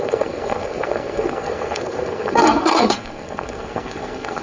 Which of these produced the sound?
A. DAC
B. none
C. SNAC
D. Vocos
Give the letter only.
C